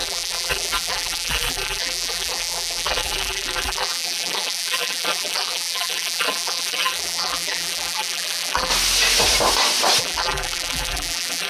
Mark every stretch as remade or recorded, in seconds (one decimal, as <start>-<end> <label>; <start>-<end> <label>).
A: 0.0-8.7 remade; 8.7-10.0 recorded; 10.0-11.5 remade